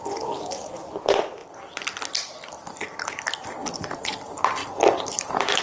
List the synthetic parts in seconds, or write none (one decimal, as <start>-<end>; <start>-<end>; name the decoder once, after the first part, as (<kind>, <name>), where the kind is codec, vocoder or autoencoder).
4.6-5.6 (vocoder, BigVGAN v2)